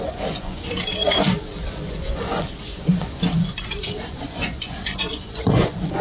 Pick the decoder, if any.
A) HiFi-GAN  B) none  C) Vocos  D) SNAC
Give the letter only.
C